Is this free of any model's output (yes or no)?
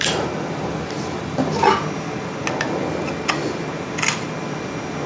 yes